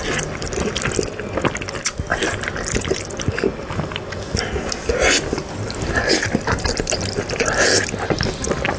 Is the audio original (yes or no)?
yes